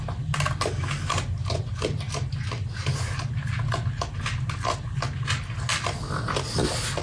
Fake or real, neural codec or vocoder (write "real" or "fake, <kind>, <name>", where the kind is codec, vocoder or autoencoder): real